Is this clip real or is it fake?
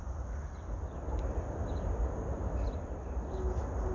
real